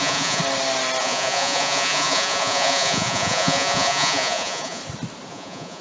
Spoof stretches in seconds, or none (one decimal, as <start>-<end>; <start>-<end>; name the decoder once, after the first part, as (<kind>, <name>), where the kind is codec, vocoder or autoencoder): 0.0-0.4 (vocoder, Vocos); 1.0-4.8; 5.3-5.8